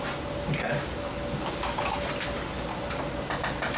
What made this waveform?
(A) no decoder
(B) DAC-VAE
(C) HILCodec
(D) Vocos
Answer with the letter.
A